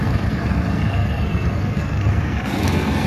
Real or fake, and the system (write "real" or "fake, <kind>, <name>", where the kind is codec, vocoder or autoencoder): fake, codec, SNAC